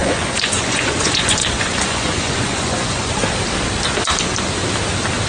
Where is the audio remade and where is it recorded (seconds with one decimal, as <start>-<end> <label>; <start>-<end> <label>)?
0.0-3.2 remade; 3.2-5.3 recorded